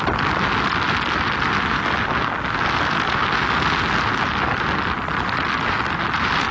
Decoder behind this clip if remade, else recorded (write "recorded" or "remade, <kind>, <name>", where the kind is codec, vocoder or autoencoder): recorded